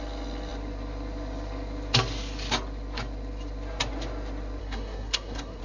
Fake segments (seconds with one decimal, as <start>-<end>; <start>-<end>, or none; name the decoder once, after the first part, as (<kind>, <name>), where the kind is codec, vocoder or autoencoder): 4.6-5.6 (codec, SNAC)

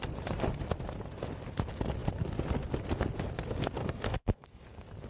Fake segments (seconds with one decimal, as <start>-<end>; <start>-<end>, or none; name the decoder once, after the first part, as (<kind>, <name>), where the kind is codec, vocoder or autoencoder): 3.8-4.6 (codec, SNAC)

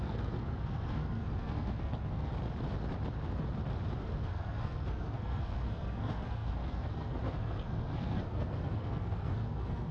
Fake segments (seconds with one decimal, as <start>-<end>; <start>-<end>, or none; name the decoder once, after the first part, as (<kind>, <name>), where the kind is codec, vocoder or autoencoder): 0.0-2.3 (codec, SNAC); 4.0-9.9

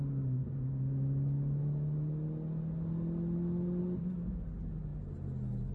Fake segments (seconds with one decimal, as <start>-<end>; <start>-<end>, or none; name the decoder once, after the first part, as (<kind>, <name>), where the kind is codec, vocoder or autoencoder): none

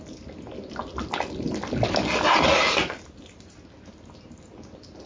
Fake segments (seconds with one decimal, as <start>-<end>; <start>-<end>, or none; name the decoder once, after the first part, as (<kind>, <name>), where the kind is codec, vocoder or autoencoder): none

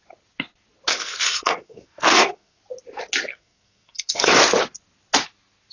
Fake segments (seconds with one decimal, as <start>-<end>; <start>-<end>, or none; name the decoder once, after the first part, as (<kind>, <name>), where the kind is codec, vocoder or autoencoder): 0.9-2.6 (codec, SNAC); 3.3-4.4

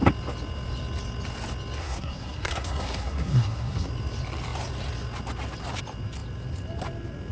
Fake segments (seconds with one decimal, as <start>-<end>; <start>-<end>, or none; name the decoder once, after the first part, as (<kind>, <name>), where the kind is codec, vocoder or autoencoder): 1.8-3.9 (codec, SNAC)

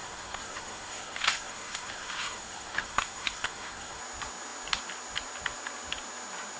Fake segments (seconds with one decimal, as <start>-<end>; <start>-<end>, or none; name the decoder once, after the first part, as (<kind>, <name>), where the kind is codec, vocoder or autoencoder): 0.0-4.0 (codec, SNAC)